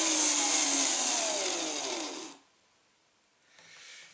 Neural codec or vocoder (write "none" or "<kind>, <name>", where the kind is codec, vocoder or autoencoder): none